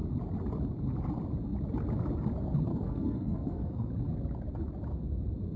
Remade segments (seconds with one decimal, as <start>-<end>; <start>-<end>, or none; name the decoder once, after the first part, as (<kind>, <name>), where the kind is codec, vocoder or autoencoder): 2.7-3.9 (codec, SNAC)